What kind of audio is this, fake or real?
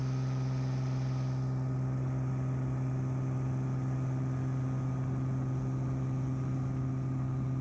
real